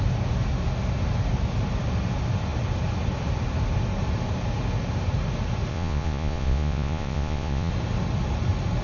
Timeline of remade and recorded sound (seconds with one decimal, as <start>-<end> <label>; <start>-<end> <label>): 0.0-5.7 recorded; 5.7-7.7 remade; 7.7-8.8 recorded